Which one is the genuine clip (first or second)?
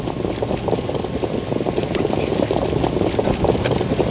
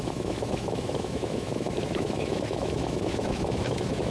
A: first